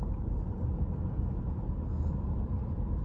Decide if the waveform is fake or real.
real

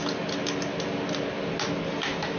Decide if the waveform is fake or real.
real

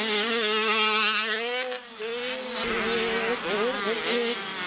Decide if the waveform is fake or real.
real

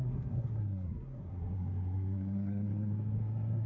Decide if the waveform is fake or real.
fake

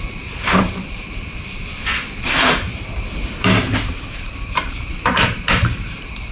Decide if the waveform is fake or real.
fake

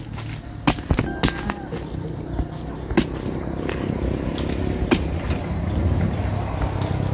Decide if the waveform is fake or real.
real